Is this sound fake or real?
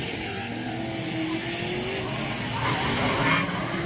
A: real